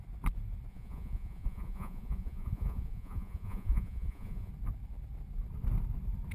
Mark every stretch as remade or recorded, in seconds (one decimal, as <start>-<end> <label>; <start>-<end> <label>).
0.0-0.7 recorded; 0.7-4.5 remade; 4.5-6.3 recorded